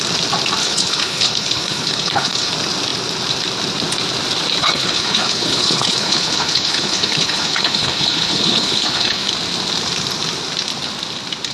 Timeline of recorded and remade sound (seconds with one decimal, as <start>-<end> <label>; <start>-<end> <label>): 0.0-0.6 recorded; 0.6-2.5 remade; 2.5-4.6 recorded; 4.6-9.3 remade; 9.3-11.5 recorded